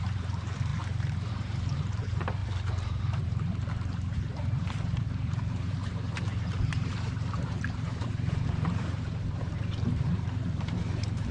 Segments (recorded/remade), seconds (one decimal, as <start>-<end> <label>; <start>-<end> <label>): 0.0-0.7 remade; 0.7-1.3 recorded; 1.3-2.4 remade; 2.4-3.2 recorded; 3.2-11.3 remade